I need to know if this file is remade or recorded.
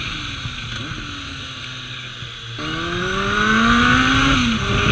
recorded